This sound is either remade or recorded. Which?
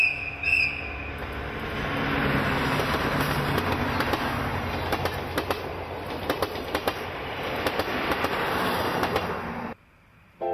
recorded